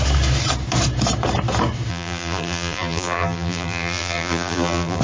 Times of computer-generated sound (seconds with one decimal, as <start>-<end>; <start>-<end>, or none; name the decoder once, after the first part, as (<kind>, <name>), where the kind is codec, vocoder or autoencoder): 1.9-5.0 (vocoder, BigVGAN v2)